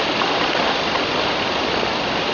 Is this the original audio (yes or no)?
yes